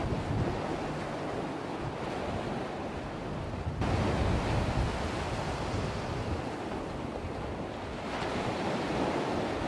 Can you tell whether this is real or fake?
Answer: real